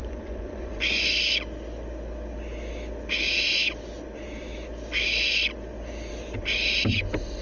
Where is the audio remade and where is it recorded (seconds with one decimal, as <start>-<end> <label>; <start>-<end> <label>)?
0.0-1.1 remade; 1.1-7.4 recorded